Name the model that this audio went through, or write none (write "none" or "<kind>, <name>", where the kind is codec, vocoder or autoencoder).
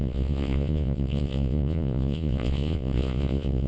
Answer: vocoder, Vocos